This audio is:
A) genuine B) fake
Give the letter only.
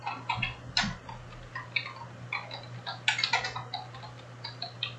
A